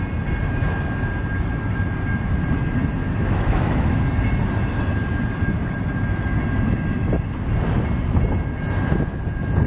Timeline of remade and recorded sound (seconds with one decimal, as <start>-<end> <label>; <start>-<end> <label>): 0.0-3.0 recorded; 3.0-4.0 remade; 4.0-9.7 recorded